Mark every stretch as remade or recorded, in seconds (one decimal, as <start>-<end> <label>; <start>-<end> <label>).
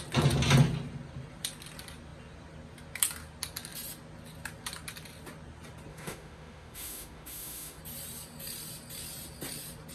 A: 0.0-5.9 recorded; 5.9-7.8 remade; 7.8-9.9 recorded